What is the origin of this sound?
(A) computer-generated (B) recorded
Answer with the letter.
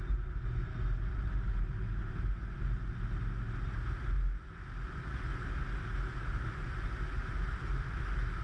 B